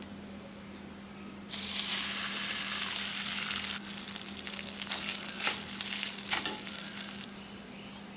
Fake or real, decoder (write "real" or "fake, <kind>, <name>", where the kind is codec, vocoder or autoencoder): fake, vocoder, BigVGAN v2